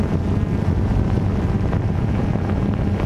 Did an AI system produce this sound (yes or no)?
no